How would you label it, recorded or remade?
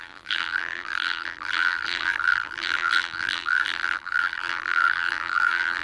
remade